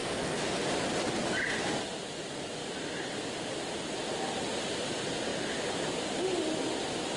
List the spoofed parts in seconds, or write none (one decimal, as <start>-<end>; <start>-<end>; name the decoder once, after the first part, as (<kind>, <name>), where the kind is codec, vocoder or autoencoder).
none